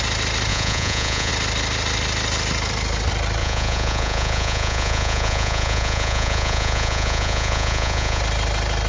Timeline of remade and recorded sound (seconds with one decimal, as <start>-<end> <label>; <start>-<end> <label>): 0.0-0.5 recorded; 0.5-1.3 remade; 1.3-3.4 recorded; 3.4-8.2 remade; 8.2-8.9 recorded